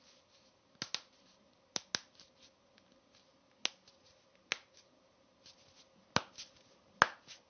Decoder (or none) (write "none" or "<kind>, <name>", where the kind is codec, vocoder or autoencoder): none